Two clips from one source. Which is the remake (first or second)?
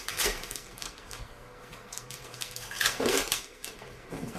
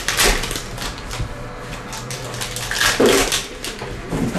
first